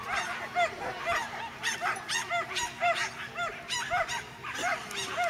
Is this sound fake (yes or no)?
no